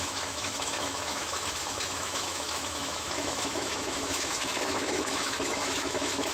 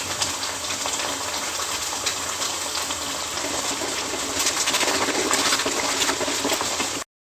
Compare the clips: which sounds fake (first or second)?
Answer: first